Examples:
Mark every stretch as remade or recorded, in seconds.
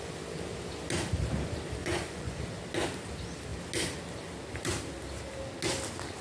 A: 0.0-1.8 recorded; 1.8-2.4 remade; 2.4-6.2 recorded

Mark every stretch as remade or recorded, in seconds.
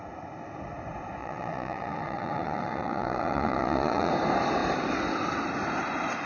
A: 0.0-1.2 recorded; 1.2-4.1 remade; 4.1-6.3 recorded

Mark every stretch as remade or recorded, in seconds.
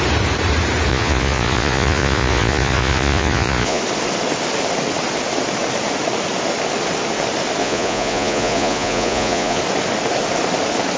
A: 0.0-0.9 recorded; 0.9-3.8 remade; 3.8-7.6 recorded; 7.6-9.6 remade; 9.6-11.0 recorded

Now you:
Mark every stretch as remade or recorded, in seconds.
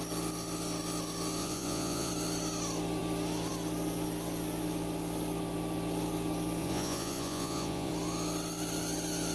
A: 0.0-1.4 recorded; 1.4-2.1 remade; 2.1-6.6 recorded; 6.6-7.9 remade; 7.9-9.3 recorded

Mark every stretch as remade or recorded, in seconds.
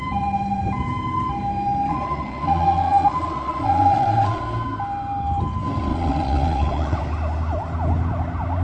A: 0.0-1.9 recorded; 1.9-4.4 remade; 4.4-5.9 recorded; 5.9-7.0 remade; 7.0-8.6 recorded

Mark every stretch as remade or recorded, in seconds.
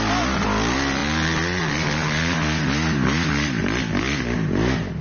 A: 0.0-5.0 recorded